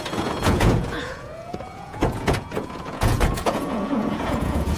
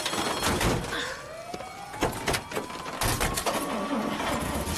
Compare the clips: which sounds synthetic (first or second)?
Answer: first